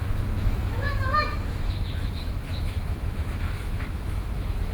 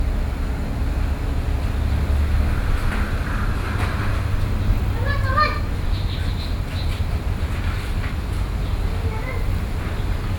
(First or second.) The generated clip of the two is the first